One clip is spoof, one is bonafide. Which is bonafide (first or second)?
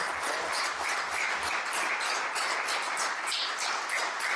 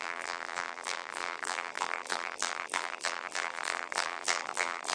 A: first